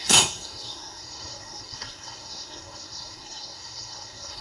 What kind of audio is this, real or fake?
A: fake